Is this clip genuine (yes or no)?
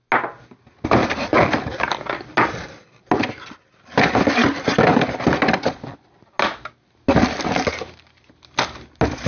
yes